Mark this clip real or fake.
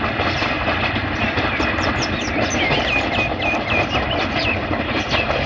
real